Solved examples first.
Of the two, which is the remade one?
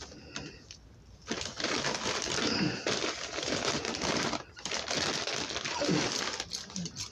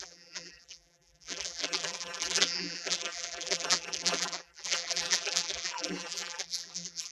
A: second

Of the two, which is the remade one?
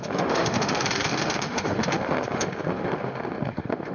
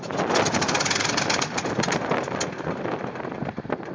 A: first